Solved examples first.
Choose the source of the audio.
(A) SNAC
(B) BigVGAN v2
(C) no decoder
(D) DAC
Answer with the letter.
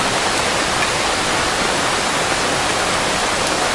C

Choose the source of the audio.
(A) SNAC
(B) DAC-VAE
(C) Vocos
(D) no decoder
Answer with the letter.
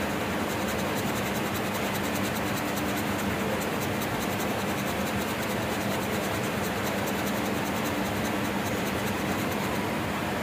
D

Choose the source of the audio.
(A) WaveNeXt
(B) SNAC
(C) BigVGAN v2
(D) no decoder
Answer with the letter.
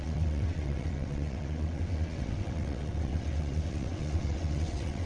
A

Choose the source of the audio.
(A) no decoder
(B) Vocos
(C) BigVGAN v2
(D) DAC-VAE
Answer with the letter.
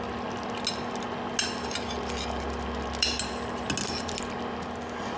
A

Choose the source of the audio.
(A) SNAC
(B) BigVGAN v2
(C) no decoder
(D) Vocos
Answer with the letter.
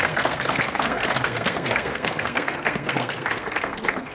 A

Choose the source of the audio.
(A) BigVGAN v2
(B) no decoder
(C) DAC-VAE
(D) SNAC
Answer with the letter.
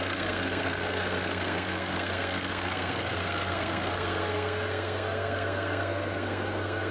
D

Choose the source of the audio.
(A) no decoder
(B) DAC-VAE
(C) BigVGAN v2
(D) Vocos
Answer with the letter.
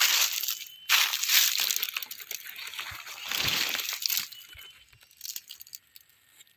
A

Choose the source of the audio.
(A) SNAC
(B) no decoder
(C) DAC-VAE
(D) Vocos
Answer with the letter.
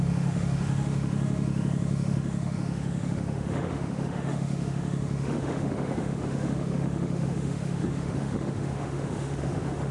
C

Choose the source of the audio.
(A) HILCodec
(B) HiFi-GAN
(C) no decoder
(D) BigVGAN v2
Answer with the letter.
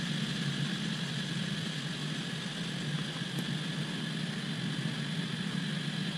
C